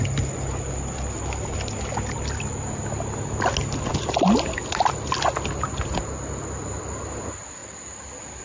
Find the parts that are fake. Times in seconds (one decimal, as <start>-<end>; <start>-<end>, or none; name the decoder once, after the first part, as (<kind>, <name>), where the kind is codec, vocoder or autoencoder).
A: none